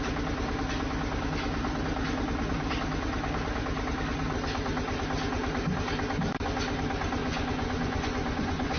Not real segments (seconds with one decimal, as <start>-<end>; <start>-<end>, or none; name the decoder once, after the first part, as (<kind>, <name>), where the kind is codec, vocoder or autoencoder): 7.2-8.8 (vocoder, Vocos)